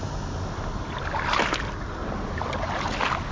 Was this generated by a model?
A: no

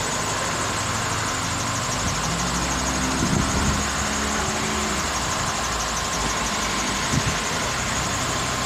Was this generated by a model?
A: no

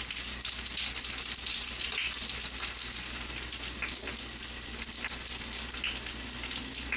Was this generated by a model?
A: no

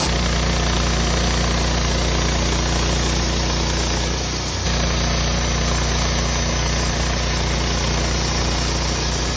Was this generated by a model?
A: no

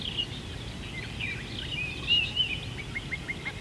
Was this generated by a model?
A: no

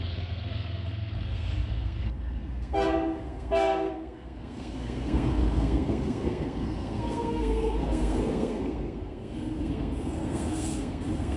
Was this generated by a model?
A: yes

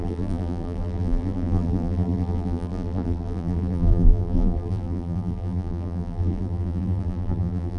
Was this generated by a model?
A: yes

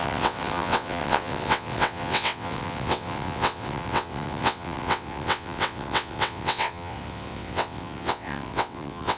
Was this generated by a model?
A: yes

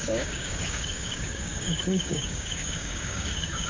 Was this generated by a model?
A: yes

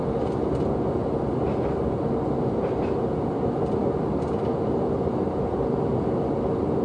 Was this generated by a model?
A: no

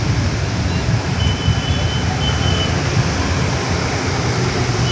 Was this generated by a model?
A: no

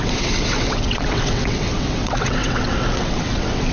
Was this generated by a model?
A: yes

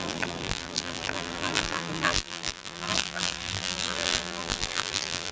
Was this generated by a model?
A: yes